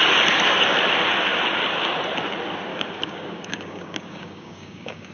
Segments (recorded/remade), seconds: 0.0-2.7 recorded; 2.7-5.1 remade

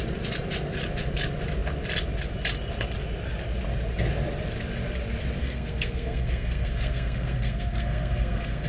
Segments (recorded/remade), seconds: 0.0-5.4 recorded; 5.4-8.7 remade

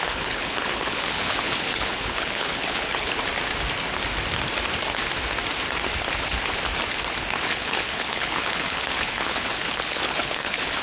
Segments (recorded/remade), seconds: 0.0-3.2 remade; 3.2-7.4 recorded; 7.4-10.8 remade

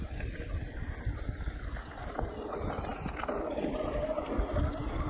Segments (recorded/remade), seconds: 0.0-5.1 recorded

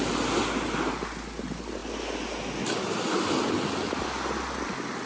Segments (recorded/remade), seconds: 0.0-5.1 recorded

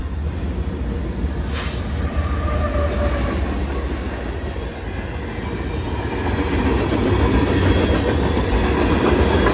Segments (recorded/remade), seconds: 0.0-9.5 recorded

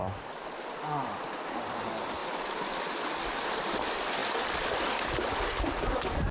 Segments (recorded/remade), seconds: 0.0-1.8 remade; 1.8-2.2 recorded; 2.2-3.8 remade; 3.8-4.2 recorded; 4.2-6.3 remade